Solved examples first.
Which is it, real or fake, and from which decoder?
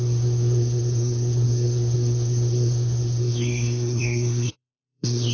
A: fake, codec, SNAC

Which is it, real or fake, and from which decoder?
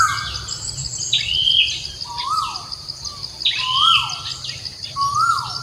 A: real